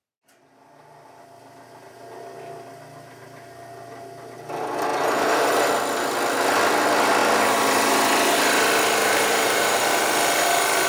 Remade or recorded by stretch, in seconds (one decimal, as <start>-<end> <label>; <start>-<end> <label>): 0.0-4.9 recorded; 4.9-5.7 remade; 5.7-9.0 recorded; 9.0-9.8 remade; 9.8-10.9 recorded